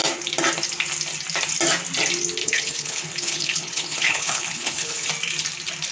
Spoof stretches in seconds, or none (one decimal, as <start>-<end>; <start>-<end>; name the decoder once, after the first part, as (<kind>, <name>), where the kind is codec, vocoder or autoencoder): 2.4-5.1 (codec, HILCodec)